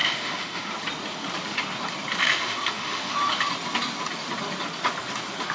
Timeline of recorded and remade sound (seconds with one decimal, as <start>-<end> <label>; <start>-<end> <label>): 0.0-0.7 remade; 0.7-2.2 recorded; 2.2-3.1 remade; 3.1-5.5 recorded